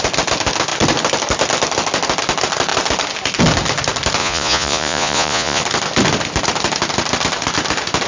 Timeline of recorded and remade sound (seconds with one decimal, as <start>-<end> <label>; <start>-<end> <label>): 0.0-4.2 recorded; 4.2-5.6 remade; 5.6-8.1 recorded